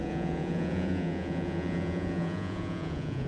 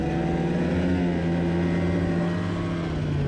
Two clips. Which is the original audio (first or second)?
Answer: second